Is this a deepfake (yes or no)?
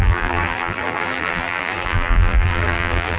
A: yes